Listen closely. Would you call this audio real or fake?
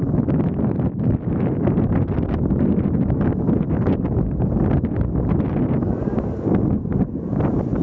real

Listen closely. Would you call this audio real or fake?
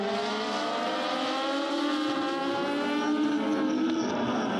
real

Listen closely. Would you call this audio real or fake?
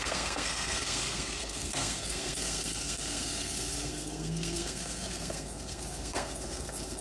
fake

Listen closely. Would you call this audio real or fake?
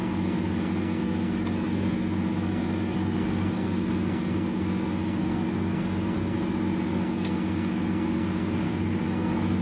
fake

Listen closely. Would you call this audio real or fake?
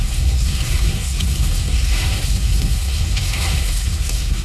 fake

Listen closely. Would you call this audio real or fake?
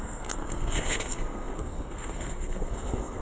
fake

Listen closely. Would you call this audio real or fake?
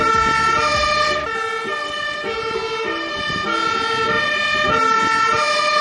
real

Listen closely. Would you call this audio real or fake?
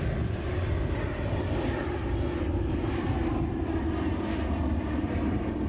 real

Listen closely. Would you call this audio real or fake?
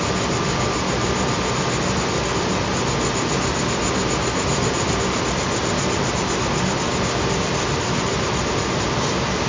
real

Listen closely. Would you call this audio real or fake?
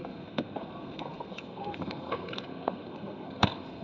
fake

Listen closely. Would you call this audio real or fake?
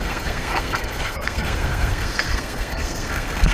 fake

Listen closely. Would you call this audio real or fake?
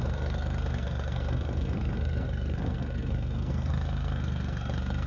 fake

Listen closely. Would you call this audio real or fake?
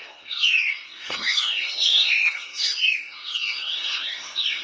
fake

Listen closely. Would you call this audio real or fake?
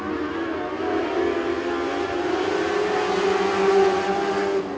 real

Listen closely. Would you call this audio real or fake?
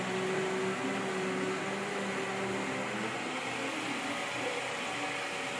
real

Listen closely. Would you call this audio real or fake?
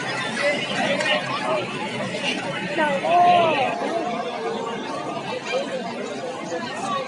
real